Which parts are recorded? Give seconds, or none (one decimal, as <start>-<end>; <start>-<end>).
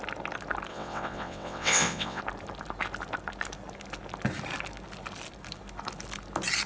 0.0-0.7; 2.2-6.7